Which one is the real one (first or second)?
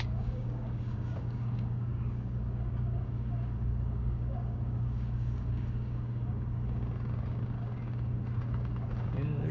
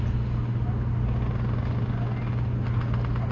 second